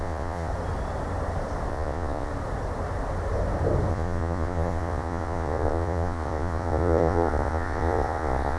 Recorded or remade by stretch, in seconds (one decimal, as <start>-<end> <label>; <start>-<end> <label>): 0.0-0.5 remade; 0.5-1.7 recorded; 1.7-2.3 remade; 2.3-3.9 recorded; 3.9-8.6 remade